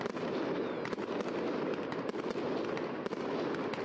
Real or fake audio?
real